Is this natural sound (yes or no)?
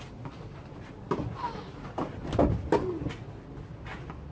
yes